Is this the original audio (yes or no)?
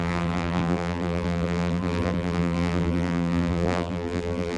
no